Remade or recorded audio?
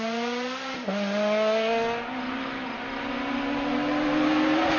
recorded